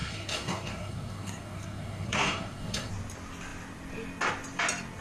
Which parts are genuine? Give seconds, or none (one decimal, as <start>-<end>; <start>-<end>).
2.9-5.0